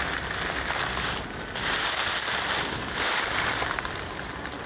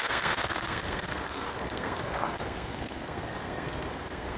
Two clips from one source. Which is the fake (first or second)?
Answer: second